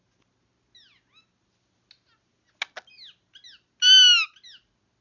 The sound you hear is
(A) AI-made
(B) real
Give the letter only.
B